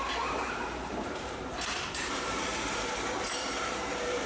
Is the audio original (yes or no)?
no